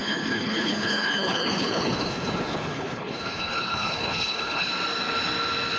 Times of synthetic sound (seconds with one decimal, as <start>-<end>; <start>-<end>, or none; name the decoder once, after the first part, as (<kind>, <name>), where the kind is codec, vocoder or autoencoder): 0.0-4.7 (codec, HILCodec)